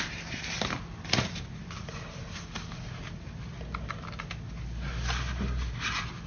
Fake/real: real